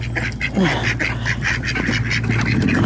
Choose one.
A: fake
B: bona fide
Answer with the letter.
B